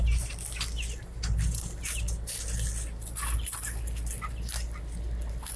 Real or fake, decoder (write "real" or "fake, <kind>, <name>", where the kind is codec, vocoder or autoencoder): real